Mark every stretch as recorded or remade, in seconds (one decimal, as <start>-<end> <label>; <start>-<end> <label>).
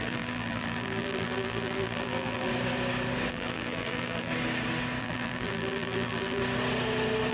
0.0-2.5 remade; 2.5-3.3 recorded; 3.3-4.3 remade; 4.3-5.0 recorded; 5.0-6.4 remade; 6.4-7.3 recorded